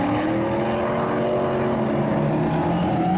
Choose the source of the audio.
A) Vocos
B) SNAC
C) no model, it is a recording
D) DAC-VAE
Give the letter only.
C